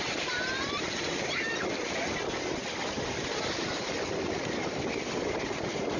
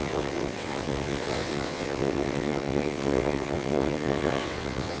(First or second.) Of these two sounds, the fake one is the second